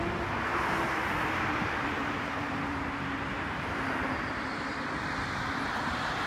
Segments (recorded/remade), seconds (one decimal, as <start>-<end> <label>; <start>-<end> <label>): 0.0-0.5 recorded; 0.5-4.3 remade; 4.3-6.3 recorded